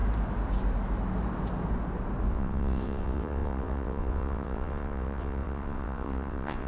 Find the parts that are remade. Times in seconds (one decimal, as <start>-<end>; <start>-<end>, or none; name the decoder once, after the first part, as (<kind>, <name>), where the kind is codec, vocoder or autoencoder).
2.3-6.7 (vocoder, WaveNeXt)